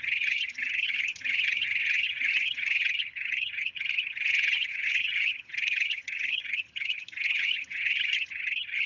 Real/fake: fake